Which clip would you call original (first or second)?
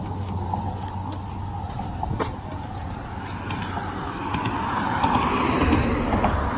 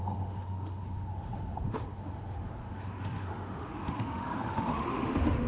first